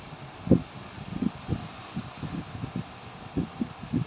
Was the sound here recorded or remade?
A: recorded